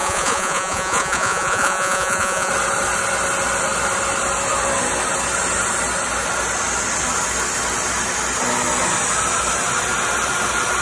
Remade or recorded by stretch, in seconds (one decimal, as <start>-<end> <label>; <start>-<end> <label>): 0.0-2.5 remade; 2.5-10.8 recorded